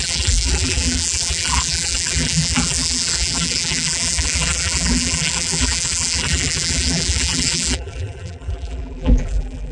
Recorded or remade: remade